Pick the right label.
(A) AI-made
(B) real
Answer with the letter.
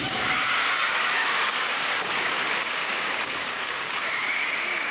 A